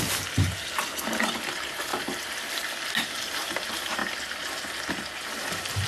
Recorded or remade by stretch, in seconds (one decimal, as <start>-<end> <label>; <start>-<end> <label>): 0.0-1.9 recorded; 1.9-2.9 remade; 2.9-4.0 recorded; 4.0-4.9 remade; 4.9-5.9 recorded

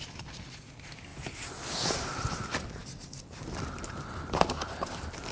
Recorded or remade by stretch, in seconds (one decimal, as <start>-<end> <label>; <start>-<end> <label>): 0.0-1.1 recorded; 1.1-1.6 remade; 1.6-5.3 recorded

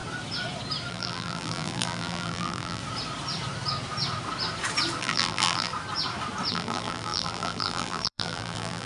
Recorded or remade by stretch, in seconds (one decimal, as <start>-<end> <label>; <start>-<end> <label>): 0.0-0.9 recorded; 0.9-2.8 remade; 2.8-5.0 recorded; 5.0-5.7 remade; 5.7-6.5 recorded; 6.5-8.9 remade

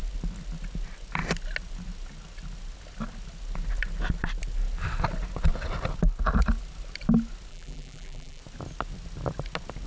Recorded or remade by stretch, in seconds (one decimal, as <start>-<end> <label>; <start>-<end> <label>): 0.0-7.5 recorded; 7.5-8.4 remade; 8.4-9.9 recorded